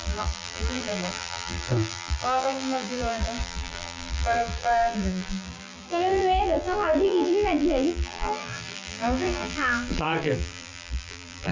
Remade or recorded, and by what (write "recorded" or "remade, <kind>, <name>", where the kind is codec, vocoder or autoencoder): remade, vocoder, BigVGAN v2